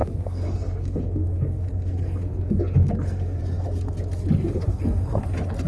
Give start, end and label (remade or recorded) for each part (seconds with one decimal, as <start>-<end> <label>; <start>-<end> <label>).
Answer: 0.0-3.4 remade; 3.4-4.4 recorded; 4.4-5.2 remade; 5.2-5.7 recorded